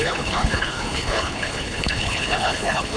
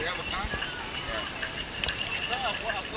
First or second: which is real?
second